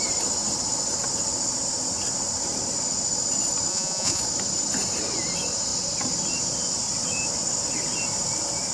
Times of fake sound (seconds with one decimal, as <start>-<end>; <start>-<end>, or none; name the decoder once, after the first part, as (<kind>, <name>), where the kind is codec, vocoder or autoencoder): 3.7-4.2 (vocoder, Vocos)